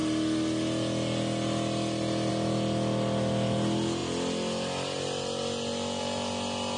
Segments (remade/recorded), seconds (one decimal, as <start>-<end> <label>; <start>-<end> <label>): 0.0-6.8 recorded

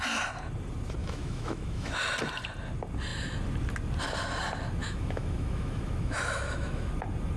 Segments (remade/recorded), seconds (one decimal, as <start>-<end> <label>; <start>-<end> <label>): 0.0-1.0 recorded; 1.0-2.0 remade; 2.0-4.8 recorded; 4.8-6.9 remade; 6.9-7.4 recorded